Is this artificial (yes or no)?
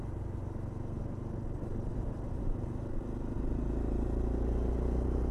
no